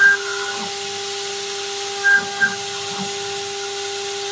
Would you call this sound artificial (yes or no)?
no